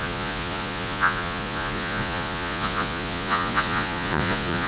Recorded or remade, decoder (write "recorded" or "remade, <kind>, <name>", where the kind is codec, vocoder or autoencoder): remade, vocoder, Vocos